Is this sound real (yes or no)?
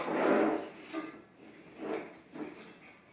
yes